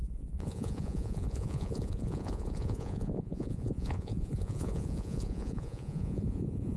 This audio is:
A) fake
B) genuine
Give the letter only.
A